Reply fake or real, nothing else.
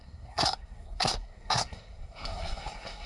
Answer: fake